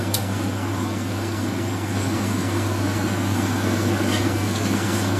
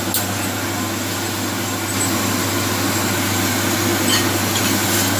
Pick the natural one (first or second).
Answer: second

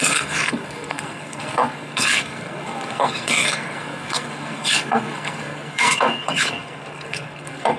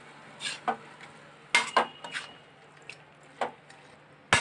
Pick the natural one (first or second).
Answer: second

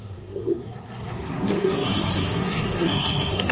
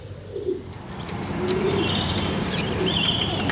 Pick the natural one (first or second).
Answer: second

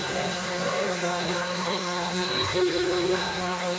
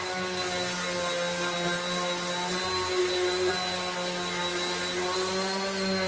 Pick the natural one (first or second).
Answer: second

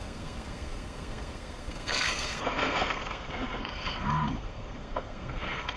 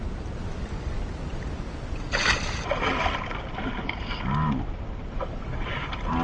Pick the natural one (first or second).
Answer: second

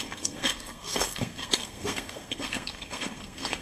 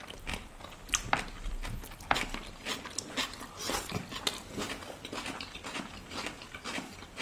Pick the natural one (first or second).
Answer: second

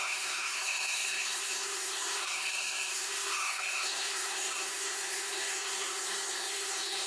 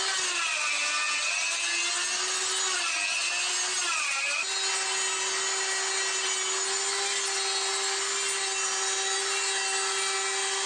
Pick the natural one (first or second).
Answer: second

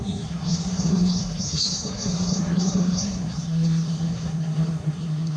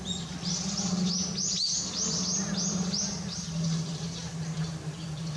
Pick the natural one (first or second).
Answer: second